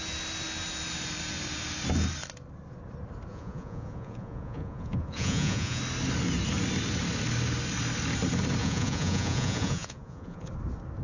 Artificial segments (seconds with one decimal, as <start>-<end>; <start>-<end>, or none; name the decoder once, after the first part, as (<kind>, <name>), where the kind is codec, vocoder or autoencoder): 3.3-5.8 (vocoder, Vocos); 8.6-10.5